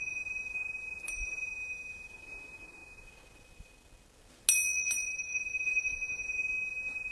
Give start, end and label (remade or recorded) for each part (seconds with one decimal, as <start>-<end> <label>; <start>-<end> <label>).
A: 0.0-7.1 recorded

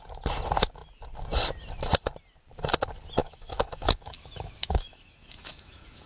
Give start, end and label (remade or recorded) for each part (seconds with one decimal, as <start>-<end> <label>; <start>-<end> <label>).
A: 0.0-3.2 recorded; 3.2-6.1 remade